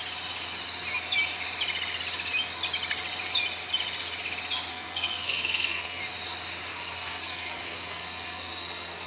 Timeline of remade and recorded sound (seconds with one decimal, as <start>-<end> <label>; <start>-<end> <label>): 0.0-4.7 recorded; 4.7-6.0 remade; 6.0-6.7 recorded; 6.7-9.1 remade